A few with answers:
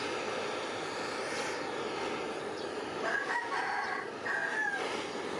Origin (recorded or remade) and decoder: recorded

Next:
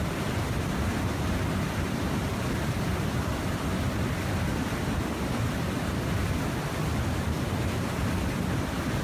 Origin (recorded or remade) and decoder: recorded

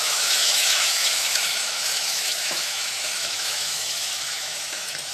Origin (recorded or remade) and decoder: remade, autoencoder, DAC-VAE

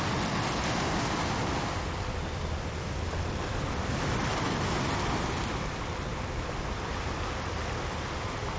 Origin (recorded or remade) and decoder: recorded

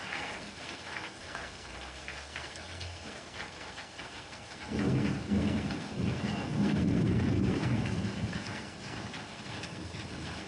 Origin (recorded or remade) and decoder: remade, codec, SNAC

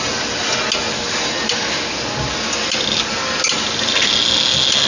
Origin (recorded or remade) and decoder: recorded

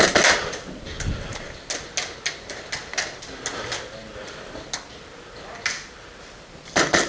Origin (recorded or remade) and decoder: recorded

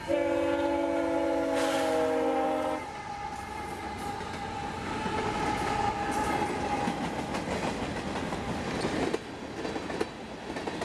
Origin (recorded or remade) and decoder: recorded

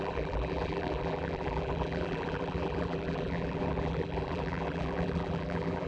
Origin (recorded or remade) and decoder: remade, vocoder, BigVGAN v2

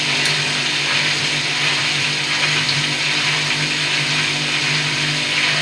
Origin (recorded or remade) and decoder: recorded